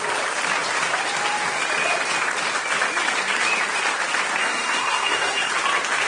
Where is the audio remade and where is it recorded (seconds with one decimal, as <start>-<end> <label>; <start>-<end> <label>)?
0.0-4.4 recorded; 4.4-5.5 remade; 5.5-6.1 recorded